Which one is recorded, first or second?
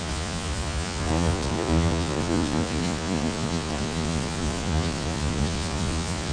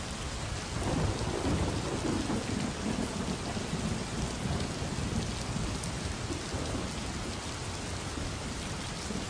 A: second